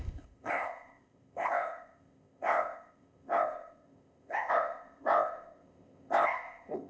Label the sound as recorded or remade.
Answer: remade